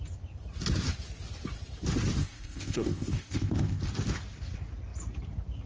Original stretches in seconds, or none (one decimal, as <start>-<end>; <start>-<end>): 0.0-2.2; 3.8-5.7